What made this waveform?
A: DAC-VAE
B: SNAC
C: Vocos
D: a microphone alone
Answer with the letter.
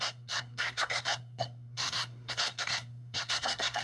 B